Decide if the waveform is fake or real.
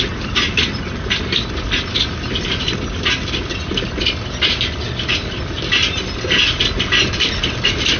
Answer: real